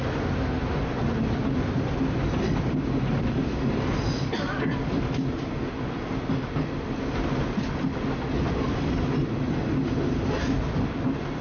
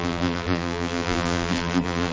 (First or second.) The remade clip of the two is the second